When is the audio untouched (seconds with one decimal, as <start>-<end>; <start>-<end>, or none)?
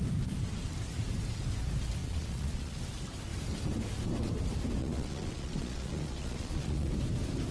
0.0-2.0; 2.8-4.8; 6.9-7.5